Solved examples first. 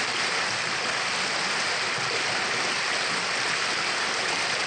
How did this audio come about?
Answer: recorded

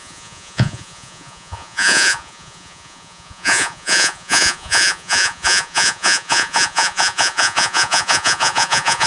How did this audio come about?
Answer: remade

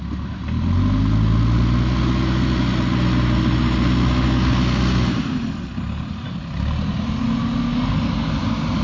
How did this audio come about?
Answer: recorded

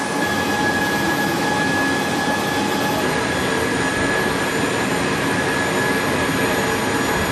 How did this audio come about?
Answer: recorded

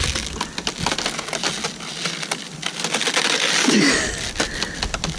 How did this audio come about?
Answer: recorded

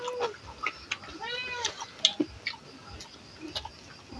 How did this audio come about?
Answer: recorded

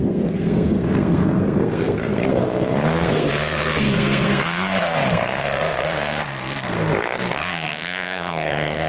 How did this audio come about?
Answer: remade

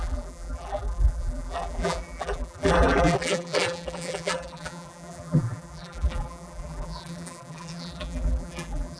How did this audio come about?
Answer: remade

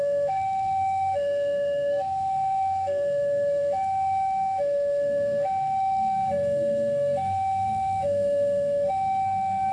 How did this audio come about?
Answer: remade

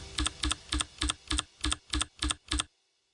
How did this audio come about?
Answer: recorded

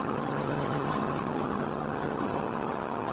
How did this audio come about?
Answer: remade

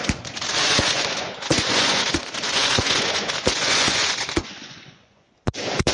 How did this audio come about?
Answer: remade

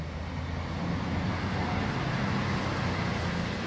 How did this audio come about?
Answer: recorded